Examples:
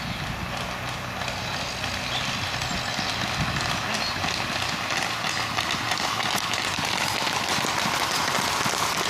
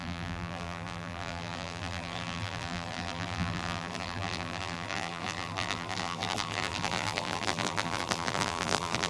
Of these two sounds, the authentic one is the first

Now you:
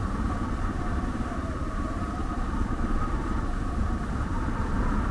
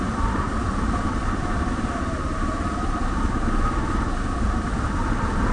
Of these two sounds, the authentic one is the second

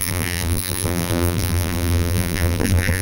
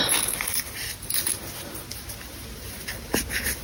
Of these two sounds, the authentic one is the second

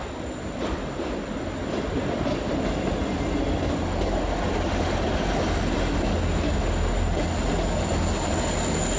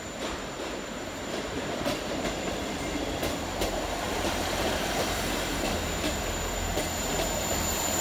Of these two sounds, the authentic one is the first